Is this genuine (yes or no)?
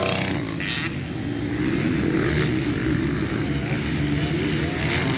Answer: yes